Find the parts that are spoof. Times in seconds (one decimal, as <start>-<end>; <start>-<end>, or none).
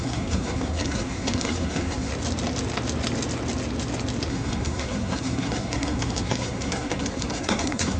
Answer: 0.0-2.1; 4.3-8.0